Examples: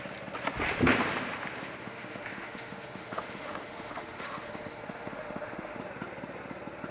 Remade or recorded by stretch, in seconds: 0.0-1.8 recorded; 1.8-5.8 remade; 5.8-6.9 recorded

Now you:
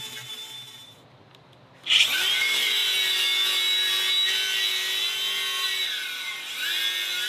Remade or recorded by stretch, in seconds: 0.0-7.3 recorded

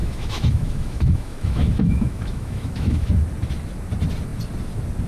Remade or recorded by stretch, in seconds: 0.0-3.1 remade; 3.1-5.1 recorded

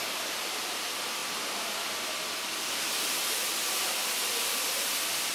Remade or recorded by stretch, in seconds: 0.0-5.3 recorded